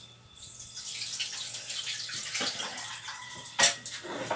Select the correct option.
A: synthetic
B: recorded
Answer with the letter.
B